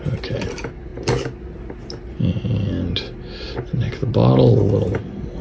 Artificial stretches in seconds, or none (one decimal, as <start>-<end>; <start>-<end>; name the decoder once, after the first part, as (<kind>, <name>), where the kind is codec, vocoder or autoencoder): none